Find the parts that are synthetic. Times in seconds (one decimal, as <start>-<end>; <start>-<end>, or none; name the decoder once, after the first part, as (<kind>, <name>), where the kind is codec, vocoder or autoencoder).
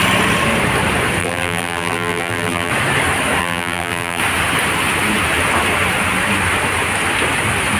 1.2-2.7 (vocoder, BigVGAN v2); 3.4-4.2